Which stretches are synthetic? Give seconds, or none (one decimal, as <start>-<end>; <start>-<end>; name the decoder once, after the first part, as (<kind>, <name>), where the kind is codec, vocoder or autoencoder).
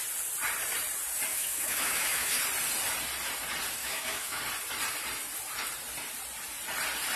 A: 1.3-2.4 (autoencoder, DAC-VAE); 3.8-4.4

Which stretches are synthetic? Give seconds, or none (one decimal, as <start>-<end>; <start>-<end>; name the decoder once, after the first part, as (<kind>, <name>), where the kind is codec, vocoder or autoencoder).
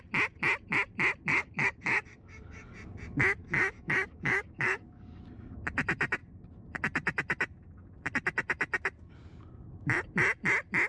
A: 1.3-2.7 (codec, DAC); 3.4-5.2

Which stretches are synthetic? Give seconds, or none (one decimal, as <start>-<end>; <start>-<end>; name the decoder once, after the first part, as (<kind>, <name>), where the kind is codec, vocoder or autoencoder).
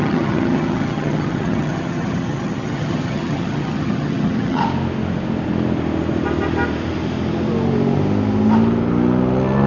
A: 0.0-4.6 (vocoder, HiFi-GAN)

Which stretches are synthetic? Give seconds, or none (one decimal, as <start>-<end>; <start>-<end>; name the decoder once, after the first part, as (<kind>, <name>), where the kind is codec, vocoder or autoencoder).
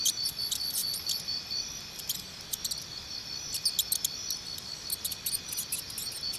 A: none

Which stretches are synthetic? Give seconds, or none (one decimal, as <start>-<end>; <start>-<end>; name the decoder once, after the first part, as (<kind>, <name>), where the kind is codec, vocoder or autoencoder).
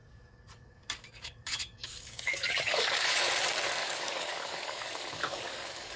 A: 0.0-3.3 (codec, DAC); 3.8-6.0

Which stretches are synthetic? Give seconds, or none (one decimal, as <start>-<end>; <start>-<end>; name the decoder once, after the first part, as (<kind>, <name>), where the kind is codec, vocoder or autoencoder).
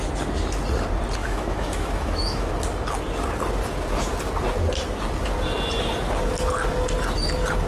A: 1.2-2.5 (autoencoder, DAC-VAE)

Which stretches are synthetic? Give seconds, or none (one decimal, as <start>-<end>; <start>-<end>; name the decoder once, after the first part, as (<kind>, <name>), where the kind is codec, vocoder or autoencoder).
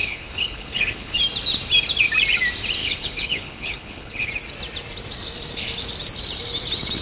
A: 0.0-1.2 (codec, HILCodec); 2.8-4.3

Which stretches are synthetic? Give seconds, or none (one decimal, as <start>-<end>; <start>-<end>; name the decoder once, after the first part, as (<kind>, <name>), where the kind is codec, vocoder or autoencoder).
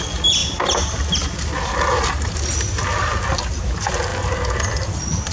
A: none